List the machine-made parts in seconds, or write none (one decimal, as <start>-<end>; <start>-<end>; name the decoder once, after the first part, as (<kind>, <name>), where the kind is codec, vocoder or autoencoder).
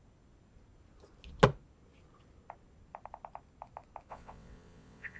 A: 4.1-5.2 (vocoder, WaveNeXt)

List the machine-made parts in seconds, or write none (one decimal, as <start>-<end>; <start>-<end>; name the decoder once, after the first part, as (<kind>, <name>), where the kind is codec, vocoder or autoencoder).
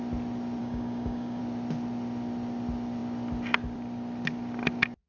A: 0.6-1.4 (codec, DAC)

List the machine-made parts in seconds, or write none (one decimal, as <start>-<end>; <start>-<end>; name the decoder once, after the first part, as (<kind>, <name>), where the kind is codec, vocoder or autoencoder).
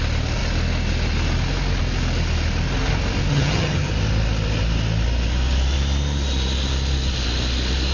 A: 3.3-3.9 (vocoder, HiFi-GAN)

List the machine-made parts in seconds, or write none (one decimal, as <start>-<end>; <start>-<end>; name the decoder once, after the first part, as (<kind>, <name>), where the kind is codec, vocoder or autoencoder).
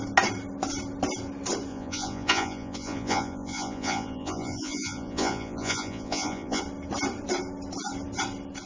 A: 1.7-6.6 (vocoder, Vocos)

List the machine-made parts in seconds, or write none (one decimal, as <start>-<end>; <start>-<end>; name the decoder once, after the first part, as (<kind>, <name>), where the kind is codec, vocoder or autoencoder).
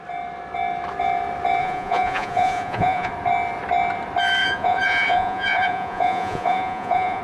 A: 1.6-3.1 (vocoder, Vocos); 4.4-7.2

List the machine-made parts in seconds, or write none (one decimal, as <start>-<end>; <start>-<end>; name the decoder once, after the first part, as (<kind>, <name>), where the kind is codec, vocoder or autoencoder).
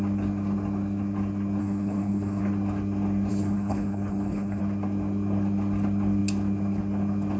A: 1.6-2.4 (codec, HILCodec); 3.3-4.6